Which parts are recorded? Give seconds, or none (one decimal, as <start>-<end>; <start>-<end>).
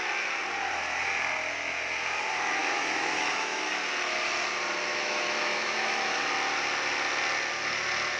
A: 0.0-2.6; 3.7-4.9; 6.2-8.2